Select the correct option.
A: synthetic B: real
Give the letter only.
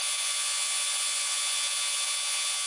A